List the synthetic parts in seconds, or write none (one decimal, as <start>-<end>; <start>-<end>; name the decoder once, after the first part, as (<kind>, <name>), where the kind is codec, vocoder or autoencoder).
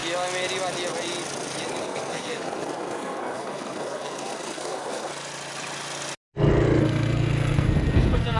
1.8-5.1 (codec, SNAC); 6.8-8.4